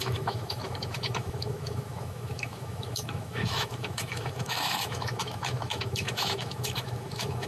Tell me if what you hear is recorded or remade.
remade